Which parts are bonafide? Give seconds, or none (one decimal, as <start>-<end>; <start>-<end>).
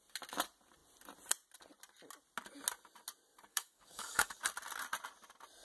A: 0.0-3.5; 4.4-5.6